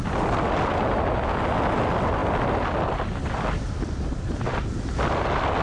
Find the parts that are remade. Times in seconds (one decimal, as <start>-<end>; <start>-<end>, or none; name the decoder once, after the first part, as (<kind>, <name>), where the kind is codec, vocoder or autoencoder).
none